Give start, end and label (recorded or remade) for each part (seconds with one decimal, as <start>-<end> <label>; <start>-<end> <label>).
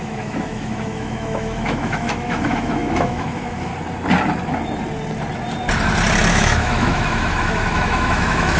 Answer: 0.0-3.7 remade; 3.7-6.3 recorded; 6.3-8.6 remade